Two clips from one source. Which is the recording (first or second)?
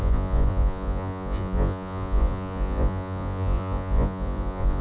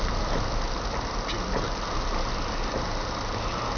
second